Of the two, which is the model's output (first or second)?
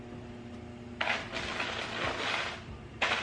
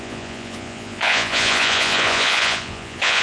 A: second